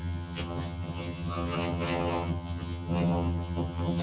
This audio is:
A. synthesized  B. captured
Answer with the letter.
A